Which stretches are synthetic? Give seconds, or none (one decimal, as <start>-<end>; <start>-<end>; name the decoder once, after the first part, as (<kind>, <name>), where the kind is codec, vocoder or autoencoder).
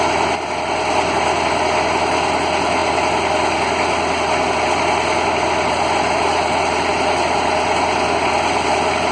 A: none